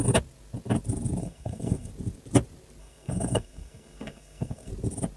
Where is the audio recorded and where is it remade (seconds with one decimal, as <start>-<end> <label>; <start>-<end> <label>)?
0.0-1.2 recorded; 1.2-1.9 remade; 1.9-2.8 recorded; 2.8-4.7 remade; 4.7-5.2 recorded